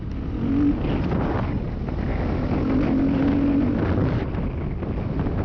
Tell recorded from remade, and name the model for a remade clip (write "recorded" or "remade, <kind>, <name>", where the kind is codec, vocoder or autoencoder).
recorded